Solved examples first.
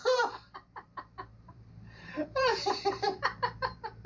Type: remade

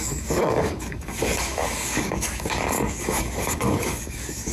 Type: remade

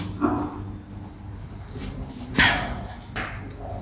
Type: recorded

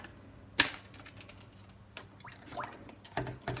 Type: recorded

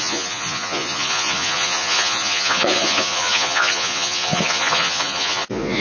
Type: remade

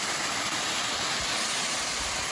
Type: recorded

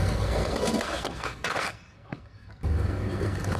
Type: remade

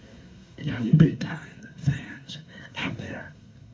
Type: remade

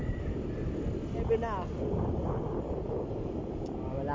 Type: recorded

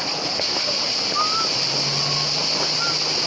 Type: recorded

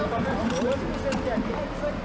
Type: recorded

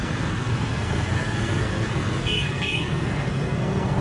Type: remade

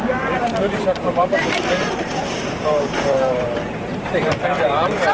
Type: remade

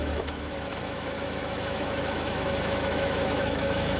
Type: remade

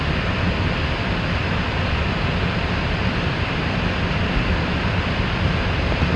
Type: recorded